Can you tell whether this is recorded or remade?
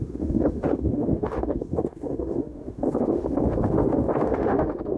remade